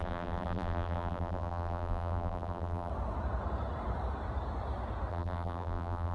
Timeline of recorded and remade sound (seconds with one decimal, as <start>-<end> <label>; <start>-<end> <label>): 0.0-2.9 remade; 2.9-5.1 recorded; 5.1-6.1 remade